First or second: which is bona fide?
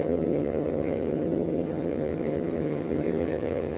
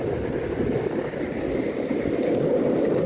second